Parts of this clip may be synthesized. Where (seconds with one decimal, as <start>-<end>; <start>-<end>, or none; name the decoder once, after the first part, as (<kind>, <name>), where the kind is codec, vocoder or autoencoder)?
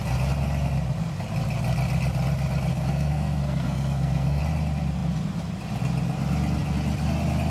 2.7-4.4 (codec, SNAC)